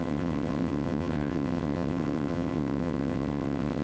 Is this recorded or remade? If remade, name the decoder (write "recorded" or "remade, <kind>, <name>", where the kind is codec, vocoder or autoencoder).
remade, vocoder, WaveNeXt